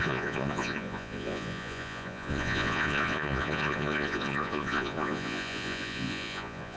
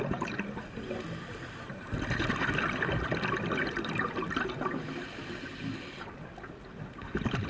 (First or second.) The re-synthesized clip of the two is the first